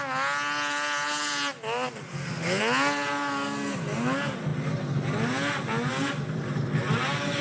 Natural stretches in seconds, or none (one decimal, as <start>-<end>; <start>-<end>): 0.0-7.4